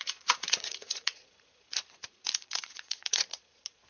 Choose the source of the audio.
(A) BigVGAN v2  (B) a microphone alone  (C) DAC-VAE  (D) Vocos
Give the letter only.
D